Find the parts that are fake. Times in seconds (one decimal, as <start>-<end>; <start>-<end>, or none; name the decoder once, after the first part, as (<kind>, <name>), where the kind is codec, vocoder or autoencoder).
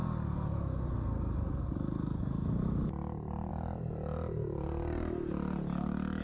none